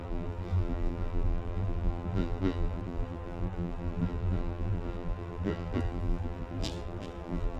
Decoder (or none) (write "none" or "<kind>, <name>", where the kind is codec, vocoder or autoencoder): vocoder, BigVGAN v2